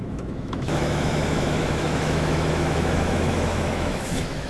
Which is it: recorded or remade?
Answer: remade